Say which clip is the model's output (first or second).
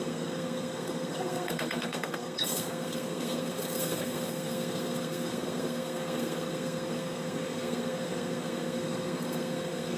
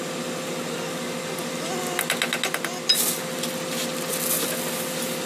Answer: first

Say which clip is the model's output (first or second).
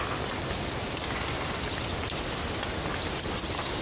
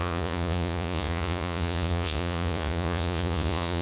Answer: second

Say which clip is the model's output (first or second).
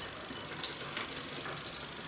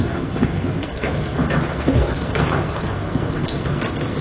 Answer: second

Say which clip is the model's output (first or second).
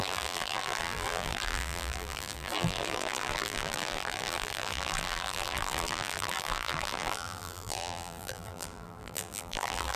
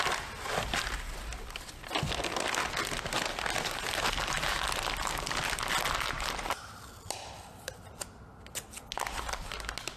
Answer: first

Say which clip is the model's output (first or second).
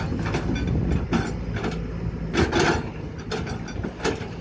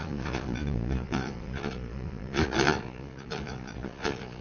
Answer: second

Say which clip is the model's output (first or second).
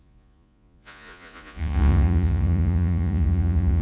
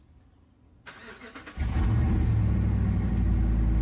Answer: first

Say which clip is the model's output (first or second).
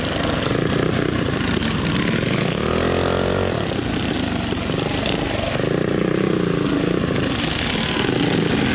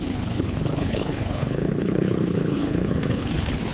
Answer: second